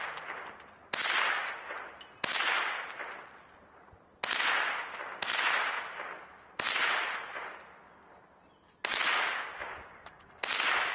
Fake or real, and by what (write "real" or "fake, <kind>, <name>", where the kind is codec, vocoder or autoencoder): real